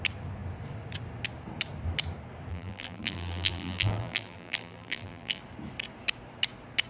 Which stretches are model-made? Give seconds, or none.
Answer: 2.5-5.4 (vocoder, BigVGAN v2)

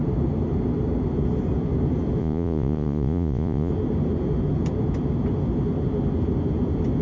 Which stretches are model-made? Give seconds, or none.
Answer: 2.2-3.7 (vocoder, Vocos)

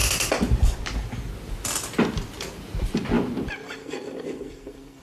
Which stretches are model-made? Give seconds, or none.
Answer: 3.8-5.0 (codec, SNAC)

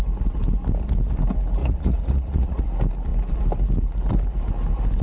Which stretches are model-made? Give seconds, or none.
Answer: 1.6-2.6 (vocoder, Vocos)

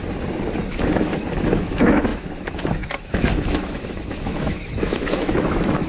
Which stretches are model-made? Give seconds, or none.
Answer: 0.7-5.9 (autoencoder, DAC-VAE)

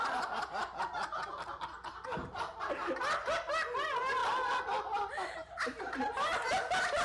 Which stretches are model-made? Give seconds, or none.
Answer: none

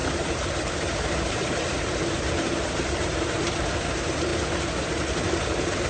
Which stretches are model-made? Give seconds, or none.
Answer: 0.0-3.5 (vocoder, BigVGAN v2)